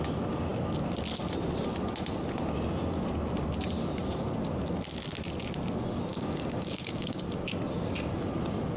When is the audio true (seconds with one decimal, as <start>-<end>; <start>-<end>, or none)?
0.0-6.1; 7.2-8.8